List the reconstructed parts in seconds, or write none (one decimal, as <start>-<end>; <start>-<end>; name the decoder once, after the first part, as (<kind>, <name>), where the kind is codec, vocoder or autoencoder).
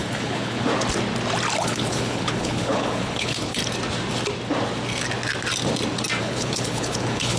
0.0-0.7 (codec, HILCodec); 1.6-3.6; 6.2-7.4